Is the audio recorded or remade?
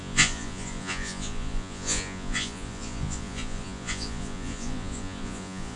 remade